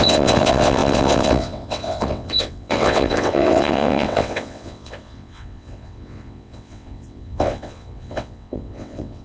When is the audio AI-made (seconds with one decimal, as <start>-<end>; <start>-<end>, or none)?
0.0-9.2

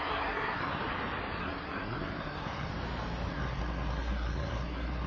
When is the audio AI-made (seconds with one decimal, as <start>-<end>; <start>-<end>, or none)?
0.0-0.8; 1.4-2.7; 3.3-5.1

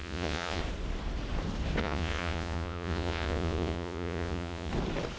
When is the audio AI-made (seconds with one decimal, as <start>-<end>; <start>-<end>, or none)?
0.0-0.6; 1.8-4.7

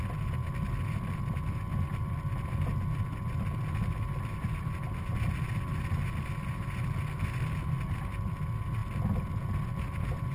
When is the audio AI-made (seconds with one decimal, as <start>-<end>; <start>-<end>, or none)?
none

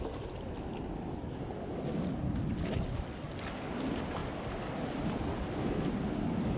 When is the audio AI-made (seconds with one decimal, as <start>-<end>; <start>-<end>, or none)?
none